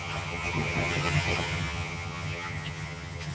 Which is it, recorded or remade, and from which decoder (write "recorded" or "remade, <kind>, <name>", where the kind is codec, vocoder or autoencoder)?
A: remade, vocoder, HiFi-GAN